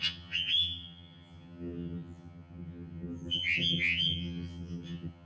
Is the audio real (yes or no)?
no